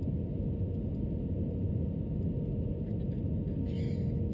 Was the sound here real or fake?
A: real